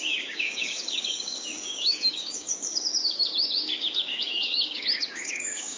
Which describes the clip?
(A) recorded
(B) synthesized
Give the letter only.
B